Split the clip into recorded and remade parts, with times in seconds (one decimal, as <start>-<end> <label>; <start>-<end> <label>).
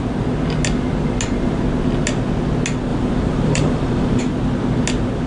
0.0-2.9 recorded; 2.9-4.2 remade; 4.2-5.3 recorded